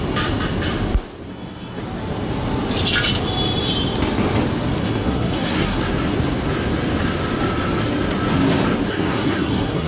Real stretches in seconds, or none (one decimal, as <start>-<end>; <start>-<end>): 0.0-1.3; 1.8-4.8; 5.8-8.9